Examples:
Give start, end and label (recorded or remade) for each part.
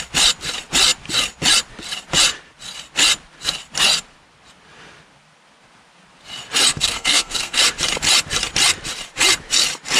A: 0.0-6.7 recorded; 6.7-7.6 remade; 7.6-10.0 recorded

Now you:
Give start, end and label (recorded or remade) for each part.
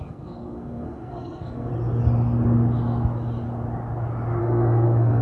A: 0.0-1.7 remade; 1.7-4.4 recorded; 4.4-5.2 remade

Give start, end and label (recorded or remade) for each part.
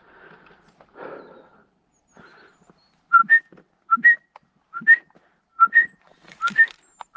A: 0.0-5.5 recorded; 5.5-6.4 remade; 6.4-7.2 recorded